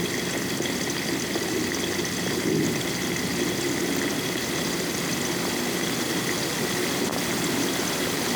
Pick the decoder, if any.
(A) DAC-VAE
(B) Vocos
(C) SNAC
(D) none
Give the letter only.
D